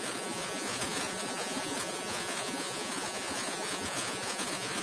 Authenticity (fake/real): fake